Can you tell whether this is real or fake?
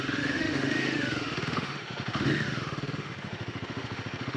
fake